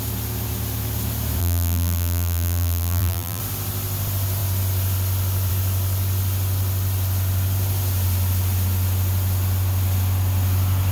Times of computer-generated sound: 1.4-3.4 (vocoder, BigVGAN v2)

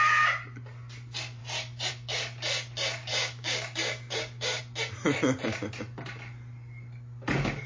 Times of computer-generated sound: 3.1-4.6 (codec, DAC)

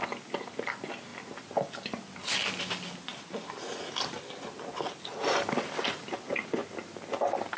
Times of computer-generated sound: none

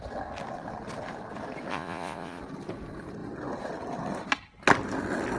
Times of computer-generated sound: 1.7-2.4 (vocoder, Vocos)

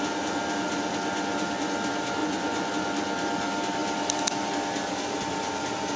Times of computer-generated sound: 2.2-2.7 (vocoder, Vocos)

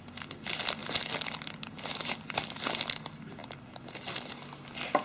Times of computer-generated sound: none

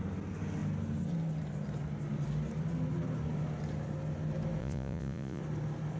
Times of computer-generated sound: 4.6-5.4 (vocoder, Vocos)

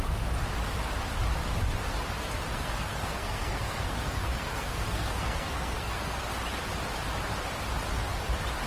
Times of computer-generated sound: 2.5-6.3 (codec, SNAC)